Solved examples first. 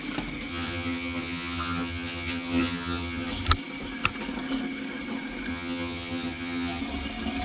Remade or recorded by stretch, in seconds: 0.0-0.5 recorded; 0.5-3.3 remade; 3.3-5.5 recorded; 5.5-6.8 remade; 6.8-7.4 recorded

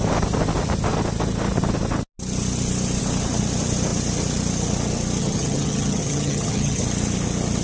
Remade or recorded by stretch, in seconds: 0.0-5.2 recorded; 5.2-6.8 remade; 6.8-7.6 recorded

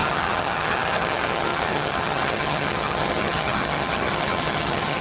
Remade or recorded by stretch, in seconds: 0.0-5.0 remade

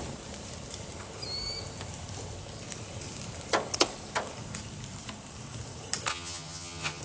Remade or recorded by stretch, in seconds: 0.0-6.1 recorded; 6.1-7.0 remade

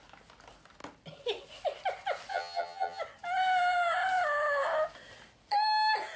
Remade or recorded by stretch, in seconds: 0.0-2.3 recorded; 2.3-3.0 remade; 3.0-6.2 recorded

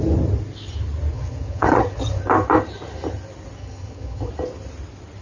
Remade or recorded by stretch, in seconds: 0.0-1.1 recorded; 1.1-2.2 remade; 2.2-3.6 recorded; 3.6-4.3 remade; 4.3-5.2 recorded

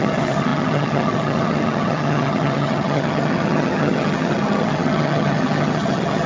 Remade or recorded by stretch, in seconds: 0.0-6.3 remade